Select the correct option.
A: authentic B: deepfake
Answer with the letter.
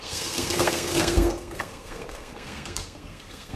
B